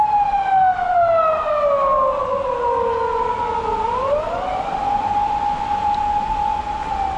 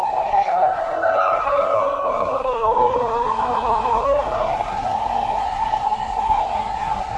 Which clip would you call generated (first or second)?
second